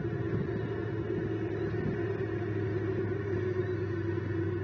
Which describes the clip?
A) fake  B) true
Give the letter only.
B